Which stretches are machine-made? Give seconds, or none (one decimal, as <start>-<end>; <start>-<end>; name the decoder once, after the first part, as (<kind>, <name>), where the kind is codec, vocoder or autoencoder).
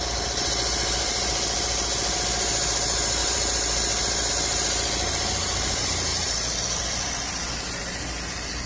3.2-4.3 (vocoder, BigVGAN v2); 6.1-7.5